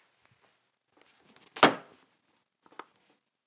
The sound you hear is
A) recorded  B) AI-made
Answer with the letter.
A